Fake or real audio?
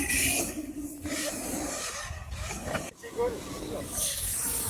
fake